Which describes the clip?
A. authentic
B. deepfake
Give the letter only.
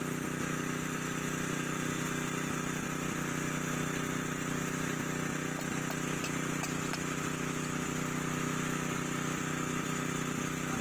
A